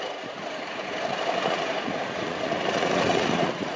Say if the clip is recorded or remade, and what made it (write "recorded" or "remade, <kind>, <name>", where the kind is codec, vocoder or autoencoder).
remade, vocoder, Vocos